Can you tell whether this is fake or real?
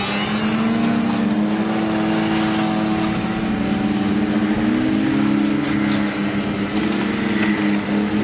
real